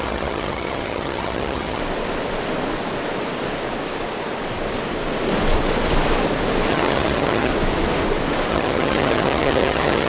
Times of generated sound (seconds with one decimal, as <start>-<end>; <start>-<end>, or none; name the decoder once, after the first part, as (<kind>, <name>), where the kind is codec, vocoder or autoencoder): 0.0-1.8 (vocoder, HiFi-GAN); 6.7-7.5; 8.5-10.1